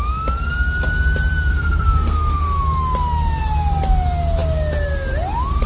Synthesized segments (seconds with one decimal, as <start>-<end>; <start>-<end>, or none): 1.5-2.6

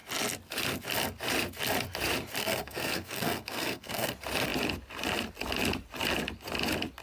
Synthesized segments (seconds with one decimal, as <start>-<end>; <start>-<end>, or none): 2.4-4.1

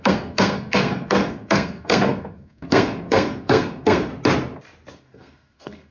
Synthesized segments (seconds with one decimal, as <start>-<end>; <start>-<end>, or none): 0.0-4.1; 4.9-5.9